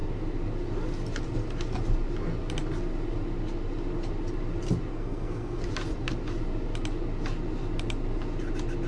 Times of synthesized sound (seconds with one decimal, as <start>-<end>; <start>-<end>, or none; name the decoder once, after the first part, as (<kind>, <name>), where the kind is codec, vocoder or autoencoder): 4.9-5.6 (codec, SNAC)